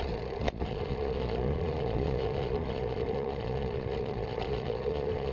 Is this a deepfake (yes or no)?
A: yes